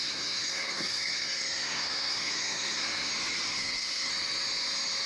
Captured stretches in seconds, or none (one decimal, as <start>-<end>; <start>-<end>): 3.1-3.5; 4.1-5.1